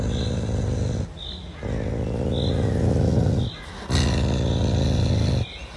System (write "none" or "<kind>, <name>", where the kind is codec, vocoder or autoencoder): none